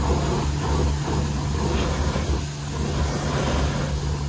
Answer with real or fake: real